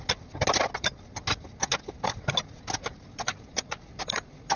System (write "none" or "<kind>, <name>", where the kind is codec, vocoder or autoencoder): none